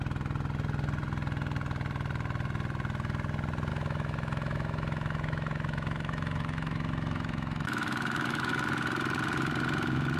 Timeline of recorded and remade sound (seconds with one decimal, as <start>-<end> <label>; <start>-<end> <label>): 0.0-3.7 recorded; 3.7-8.5 remade; 8.5-10.2 recorded